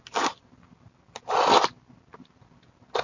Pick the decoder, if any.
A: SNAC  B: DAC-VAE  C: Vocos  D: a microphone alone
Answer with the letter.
D